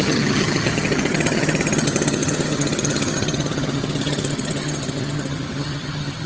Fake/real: fake